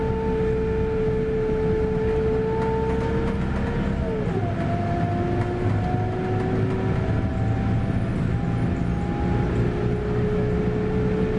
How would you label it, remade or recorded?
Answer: recorded